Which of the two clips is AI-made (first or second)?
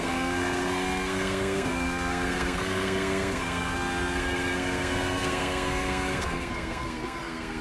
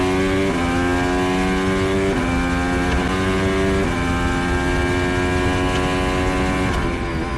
first